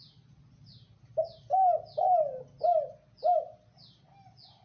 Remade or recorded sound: recorded